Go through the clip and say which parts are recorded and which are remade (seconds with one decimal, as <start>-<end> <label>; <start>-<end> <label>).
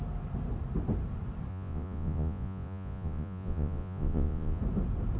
0.0-1.5 recorded; 1.5-4.6 remade; 4.6-5.2 recorded